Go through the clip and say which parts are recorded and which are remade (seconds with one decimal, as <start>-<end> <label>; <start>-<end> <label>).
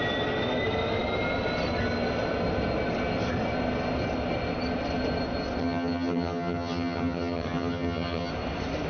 0.0-5.6 recorded; 5.6-8.3 remade; 8.3-8.9 recorded